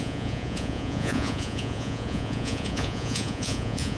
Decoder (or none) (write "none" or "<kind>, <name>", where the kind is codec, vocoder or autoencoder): vocoder, Vocos